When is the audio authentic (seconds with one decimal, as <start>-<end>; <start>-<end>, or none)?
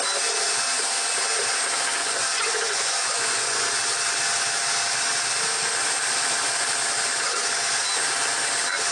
0.0-2.0; 3.7-7.2; 7.8-8.9